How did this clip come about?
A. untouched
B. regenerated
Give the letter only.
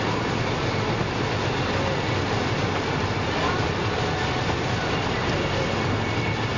A